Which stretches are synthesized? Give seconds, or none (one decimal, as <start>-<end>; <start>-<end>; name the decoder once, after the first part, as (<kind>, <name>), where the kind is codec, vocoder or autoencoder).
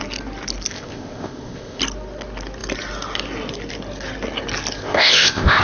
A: 0.7-1.8 (codec, ZipCodec); 4.8-5.6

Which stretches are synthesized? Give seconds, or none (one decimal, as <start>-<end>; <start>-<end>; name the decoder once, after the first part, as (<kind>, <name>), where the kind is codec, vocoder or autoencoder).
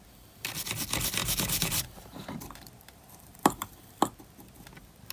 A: 1.2-3.6 (vocoder, BigVGAN v2)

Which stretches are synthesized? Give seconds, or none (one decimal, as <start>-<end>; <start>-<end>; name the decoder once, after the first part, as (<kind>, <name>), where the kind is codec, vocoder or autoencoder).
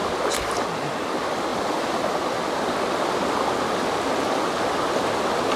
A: none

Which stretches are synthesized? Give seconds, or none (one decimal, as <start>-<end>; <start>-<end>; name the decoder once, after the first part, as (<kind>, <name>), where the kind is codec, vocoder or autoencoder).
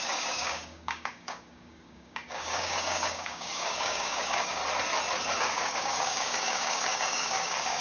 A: 0.0-4.6 (codec, DAC); 5.4-7.8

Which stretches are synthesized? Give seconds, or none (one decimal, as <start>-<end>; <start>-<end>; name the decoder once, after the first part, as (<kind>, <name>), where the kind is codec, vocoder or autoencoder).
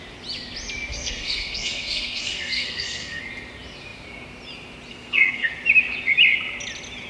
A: 0.9-3.2 (codec, SNAC); 4.9-5.5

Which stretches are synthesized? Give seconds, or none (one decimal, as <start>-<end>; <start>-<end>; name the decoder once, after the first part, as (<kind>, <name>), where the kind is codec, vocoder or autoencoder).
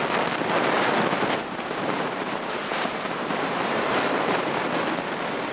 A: 1.4-4.7 (vocoder, BigVGAN v2)